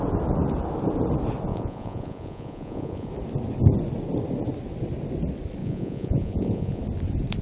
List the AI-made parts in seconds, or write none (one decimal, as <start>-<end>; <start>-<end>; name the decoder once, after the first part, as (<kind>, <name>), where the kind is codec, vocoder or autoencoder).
1.5-3.1 (vocoder, Vocos); 5.6-6.8